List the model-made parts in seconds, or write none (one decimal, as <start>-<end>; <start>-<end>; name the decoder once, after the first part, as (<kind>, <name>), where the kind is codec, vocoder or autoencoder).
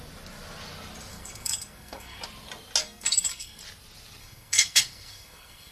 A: 1.1-2.2 (codec, SNAC); 2.8-3.6; 4.2-5.7